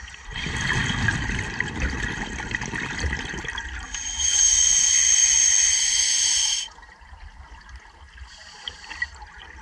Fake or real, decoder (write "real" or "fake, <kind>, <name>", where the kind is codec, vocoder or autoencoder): real